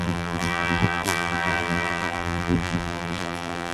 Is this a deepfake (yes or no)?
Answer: yes